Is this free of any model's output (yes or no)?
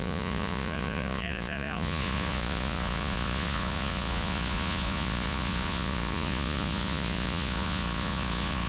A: no